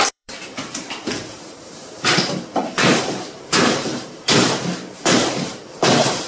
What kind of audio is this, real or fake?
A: fake